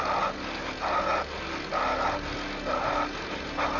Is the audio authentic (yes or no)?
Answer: yes